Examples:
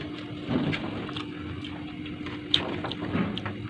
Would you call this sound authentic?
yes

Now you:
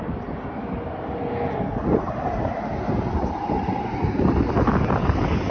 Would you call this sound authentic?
yes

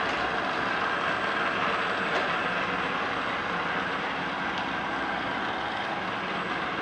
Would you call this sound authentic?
yes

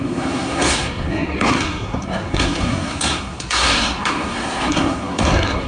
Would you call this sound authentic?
no